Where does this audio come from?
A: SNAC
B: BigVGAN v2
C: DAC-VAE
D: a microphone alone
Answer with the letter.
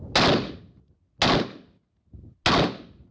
D